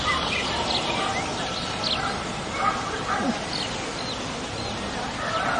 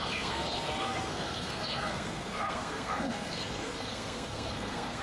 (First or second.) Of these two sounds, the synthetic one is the second